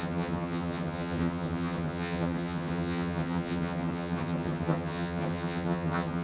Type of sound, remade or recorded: remade